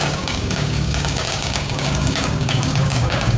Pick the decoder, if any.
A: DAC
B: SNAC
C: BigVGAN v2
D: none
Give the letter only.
A